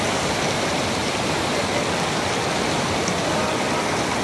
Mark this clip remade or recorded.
recorded